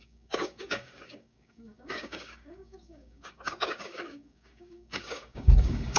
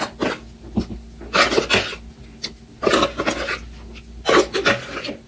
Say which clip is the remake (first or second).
first